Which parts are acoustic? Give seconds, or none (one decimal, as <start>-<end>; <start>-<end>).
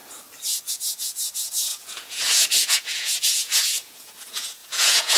0.0-0.7